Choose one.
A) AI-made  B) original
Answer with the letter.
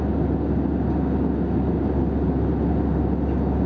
B